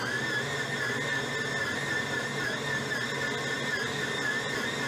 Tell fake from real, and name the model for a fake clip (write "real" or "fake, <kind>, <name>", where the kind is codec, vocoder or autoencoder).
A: real